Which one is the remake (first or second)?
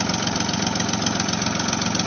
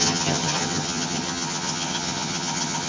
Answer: second